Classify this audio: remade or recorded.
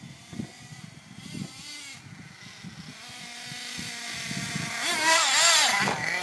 recorded